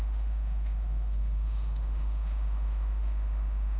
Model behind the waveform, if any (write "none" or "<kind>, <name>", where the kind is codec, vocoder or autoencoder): autoencoder, DAC-VAE